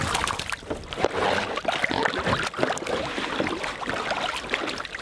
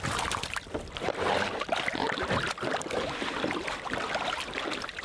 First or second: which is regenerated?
second